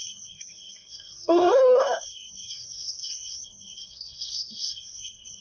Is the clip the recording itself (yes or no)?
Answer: no